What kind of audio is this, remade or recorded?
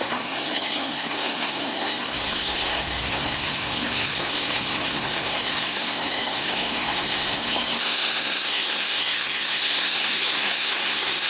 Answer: remade